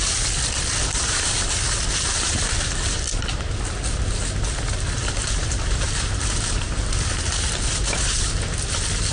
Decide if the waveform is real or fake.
real